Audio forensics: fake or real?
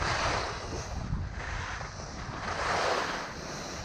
real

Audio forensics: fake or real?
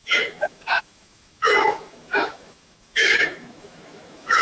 fake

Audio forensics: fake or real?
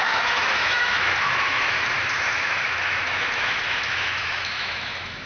fake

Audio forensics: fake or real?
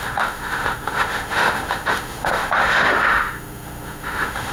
fake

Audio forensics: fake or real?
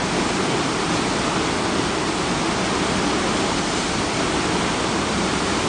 real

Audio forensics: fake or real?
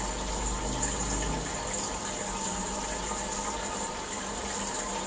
real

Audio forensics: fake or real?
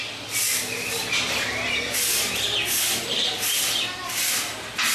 real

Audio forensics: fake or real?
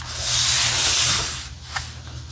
real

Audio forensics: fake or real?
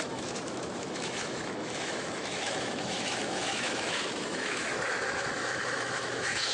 fake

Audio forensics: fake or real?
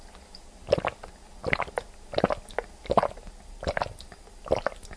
real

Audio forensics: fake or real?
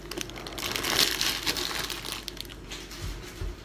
real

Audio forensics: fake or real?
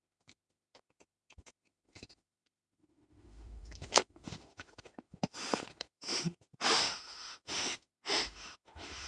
fake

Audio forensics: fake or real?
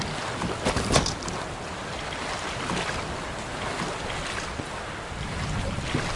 real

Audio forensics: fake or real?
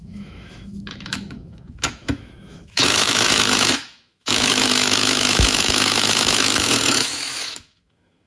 fake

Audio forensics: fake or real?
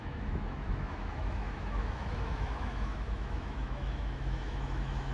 fake